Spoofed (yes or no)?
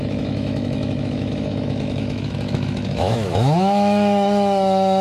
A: yes